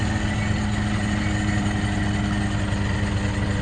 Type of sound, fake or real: real